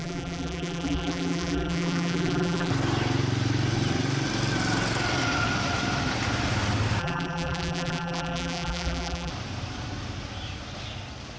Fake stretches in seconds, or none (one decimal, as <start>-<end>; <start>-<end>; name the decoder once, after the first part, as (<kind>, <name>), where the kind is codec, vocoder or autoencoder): 0.0-2.7 (vocoder, BigVGAN v2); 7.0-9.3